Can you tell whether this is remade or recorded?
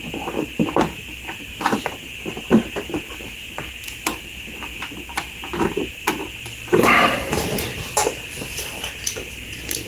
remade